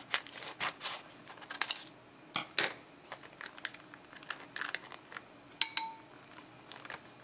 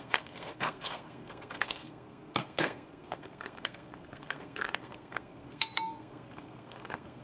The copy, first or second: second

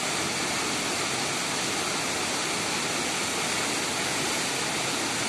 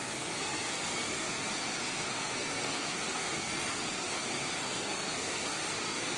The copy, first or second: second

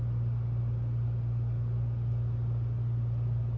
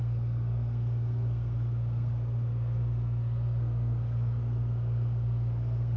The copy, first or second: second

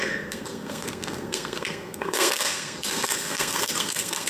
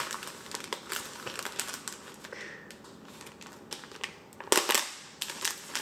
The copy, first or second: first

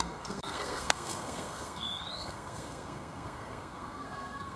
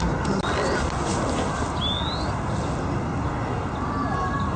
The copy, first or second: first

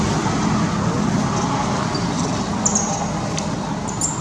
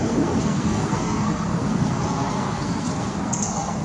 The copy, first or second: second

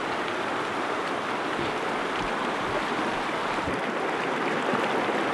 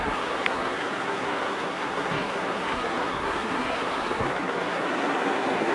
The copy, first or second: second